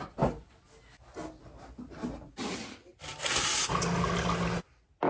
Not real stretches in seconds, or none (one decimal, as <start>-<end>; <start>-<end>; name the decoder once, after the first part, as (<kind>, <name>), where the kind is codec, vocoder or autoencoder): none